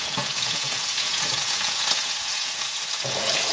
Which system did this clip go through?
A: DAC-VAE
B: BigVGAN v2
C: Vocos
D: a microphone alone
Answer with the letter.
C